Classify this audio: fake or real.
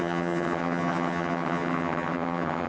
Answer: fake